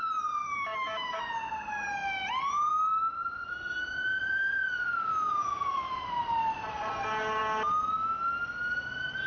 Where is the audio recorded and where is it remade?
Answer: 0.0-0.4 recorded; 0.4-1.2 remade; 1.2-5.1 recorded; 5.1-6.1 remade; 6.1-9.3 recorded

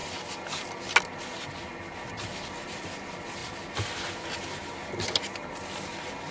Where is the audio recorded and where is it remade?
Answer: 0.0-6.3 recorded

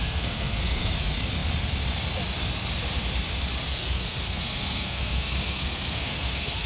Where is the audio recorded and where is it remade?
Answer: 0.0-0.9 remade; 0.9-3.7 recorded; 3.7-6.7 remade

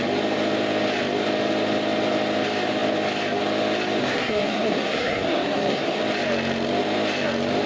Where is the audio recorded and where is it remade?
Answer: 0.0-4.0 recorded; 4.0-6.0 remade; 6.0-7.7 recorded